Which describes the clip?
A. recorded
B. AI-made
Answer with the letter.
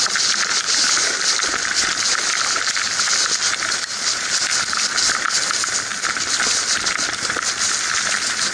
A